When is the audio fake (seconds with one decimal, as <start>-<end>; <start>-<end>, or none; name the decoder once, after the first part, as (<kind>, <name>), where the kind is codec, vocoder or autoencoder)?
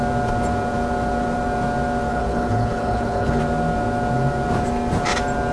2.1-3.4 (codec, HILCodec)